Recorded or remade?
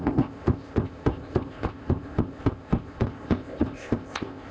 remade